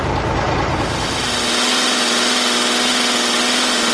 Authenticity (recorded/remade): recorded